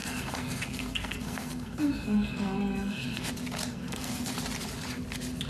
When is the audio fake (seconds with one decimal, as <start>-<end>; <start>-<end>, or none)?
0.0-3.3; 3.7-4.3